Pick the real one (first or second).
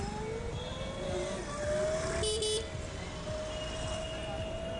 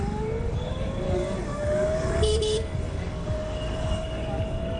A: first